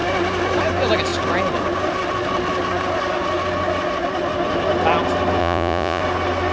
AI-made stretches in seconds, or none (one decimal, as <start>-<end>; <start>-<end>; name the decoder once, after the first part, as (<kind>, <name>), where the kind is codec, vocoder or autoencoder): 5.4-6.0 (vocoder, Vocos)